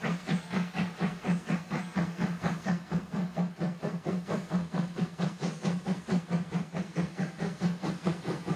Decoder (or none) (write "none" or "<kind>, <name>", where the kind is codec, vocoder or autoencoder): codec, SNAC